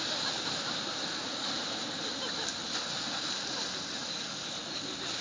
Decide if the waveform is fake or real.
fake